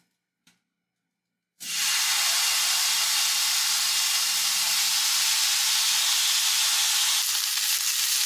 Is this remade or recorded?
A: recorded